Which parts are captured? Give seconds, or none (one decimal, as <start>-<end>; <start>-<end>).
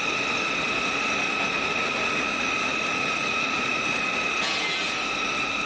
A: 0.0-1.7; 4.4-5.7